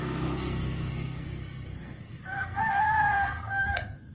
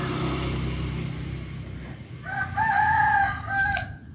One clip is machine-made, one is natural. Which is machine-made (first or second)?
first